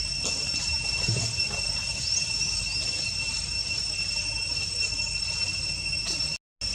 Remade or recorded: recorded